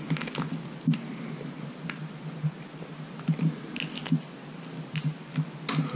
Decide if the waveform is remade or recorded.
recorded